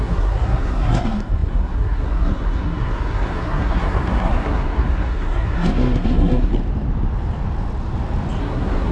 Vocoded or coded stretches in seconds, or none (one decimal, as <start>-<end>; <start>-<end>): 0.0-6.5; 8.4-8.9